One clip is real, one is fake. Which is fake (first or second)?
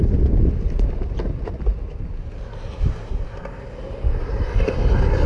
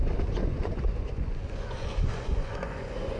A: second